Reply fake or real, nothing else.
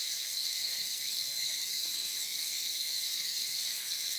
fake